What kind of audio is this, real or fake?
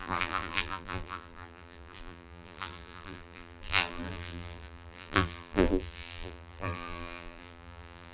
fake